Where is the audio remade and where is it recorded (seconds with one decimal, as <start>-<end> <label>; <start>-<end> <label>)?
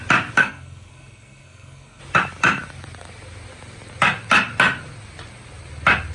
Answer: 0.0-0.4 recorded; 0.4-2.0 remade; 2.0-6.1 recorded